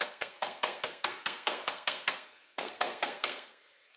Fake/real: fake